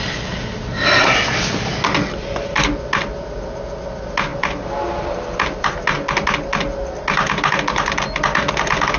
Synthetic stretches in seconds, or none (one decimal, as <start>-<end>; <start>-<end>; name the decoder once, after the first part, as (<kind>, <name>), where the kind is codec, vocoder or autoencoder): none